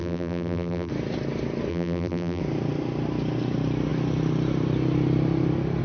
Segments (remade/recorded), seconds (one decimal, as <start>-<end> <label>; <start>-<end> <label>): 0.0-0.9 remade; 0.9-1.7 recorded; 1.7-2.4 remade; 2.4-5.8 recorded